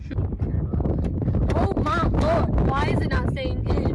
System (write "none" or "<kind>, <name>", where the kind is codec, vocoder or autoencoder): none